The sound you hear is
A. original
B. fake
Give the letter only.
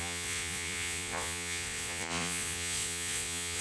B